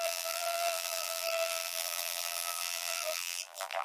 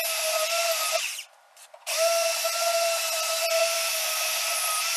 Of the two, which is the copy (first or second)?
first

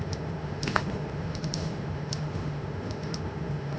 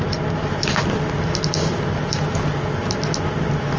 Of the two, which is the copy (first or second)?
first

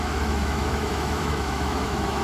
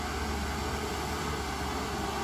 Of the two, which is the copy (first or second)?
first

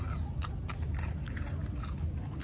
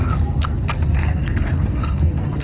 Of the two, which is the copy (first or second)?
second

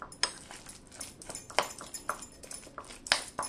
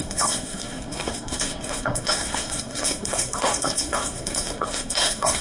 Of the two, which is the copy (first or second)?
second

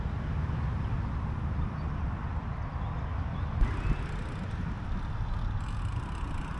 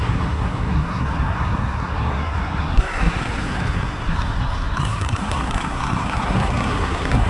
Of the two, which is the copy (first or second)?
second